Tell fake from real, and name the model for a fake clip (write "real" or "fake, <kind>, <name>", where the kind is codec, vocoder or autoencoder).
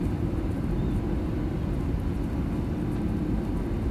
real